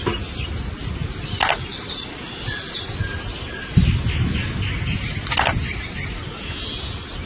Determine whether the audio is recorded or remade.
recorded